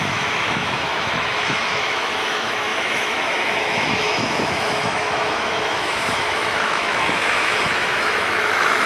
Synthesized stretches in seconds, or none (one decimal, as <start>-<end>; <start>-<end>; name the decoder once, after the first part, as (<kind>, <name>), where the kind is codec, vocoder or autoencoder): 0.0-8.9 (autoencoder, DAC-VAE)